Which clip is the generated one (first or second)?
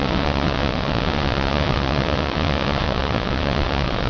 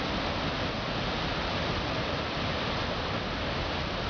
first